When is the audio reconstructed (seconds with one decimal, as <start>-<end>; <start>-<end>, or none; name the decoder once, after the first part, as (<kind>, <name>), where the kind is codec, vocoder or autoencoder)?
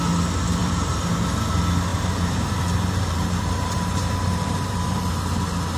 0.6-1.4 (vocoder, BigVGAN v2); 1.9-5.1